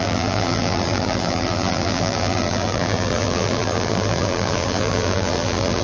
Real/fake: fake